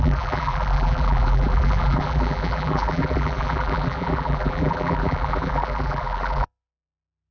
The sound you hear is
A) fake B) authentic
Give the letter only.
A